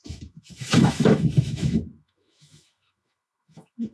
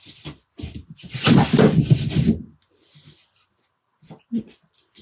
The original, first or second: second